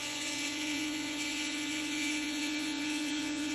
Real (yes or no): no